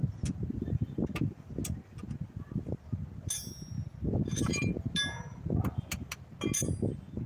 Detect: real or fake real